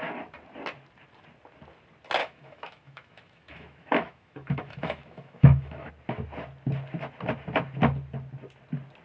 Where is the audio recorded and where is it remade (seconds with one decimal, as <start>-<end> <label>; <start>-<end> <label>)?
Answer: 0.0-2.2 recorded; 2.2-5.9 remade; 5.9-9.0 recorded